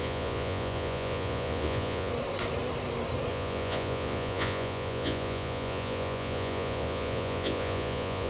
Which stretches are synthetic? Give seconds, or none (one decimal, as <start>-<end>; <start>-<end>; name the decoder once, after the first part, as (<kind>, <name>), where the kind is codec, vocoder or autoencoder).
0.0-2.1 (vocoder, Vocos); 3.3-8.3